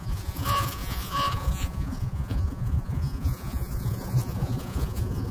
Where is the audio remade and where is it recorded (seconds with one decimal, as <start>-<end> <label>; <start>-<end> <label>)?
0.0-5.3 remade